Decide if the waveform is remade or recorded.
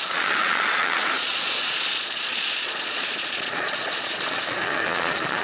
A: remade